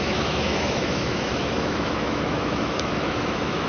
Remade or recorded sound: remade